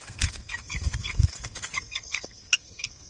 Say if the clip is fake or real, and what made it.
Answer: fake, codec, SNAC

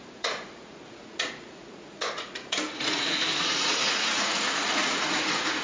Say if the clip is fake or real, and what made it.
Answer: fake, vocoder, Vocos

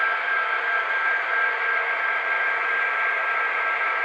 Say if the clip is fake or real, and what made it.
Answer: real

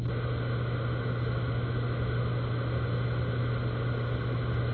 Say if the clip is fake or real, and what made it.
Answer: real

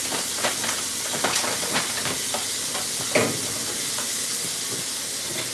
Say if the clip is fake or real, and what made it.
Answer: real